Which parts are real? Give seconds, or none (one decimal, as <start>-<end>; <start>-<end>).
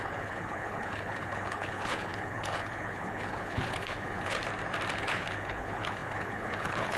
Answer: 4.4-4.9